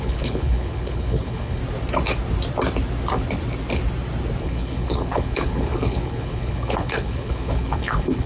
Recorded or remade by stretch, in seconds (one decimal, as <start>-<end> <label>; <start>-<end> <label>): 0.0-1.6 remade; 1.6-4.4 recorded; 4.4-8.3 remade